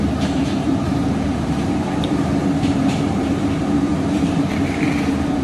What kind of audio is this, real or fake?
fake